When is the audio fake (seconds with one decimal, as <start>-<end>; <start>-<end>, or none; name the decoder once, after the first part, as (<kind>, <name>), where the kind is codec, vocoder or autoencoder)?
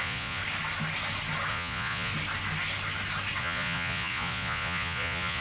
0.0-0.4 (vocoder, Vocos); 1.5-2.1; 3.4-5.4